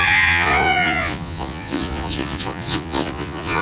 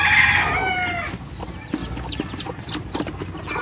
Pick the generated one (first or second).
first